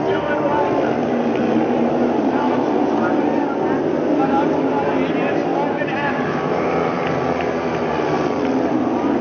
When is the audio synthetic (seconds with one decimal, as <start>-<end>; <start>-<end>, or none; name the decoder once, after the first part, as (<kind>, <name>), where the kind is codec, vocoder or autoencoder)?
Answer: none